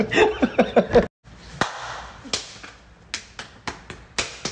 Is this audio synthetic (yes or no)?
no